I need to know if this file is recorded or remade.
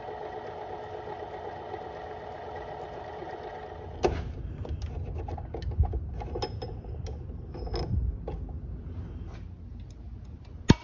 recorded